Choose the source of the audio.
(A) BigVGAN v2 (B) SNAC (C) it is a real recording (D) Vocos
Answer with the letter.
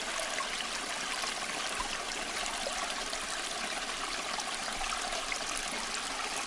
C